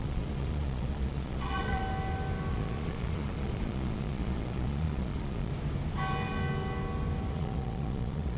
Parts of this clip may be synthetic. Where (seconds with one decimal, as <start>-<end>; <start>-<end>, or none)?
0.0-1.8; 2.5-5.5; 7.3-8.4